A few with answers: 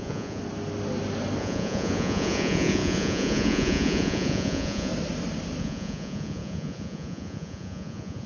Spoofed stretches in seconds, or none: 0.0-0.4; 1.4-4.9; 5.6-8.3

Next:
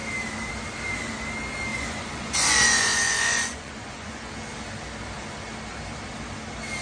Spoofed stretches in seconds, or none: 1.7-4.3

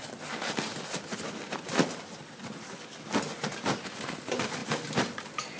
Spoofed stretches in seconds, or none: none

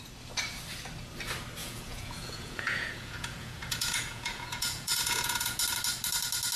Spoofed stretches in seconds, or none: 1.6-5.6

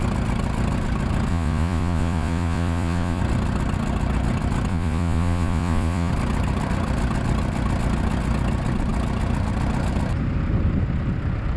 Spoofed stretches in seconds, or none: 1.3-3.2; 4.7-6.1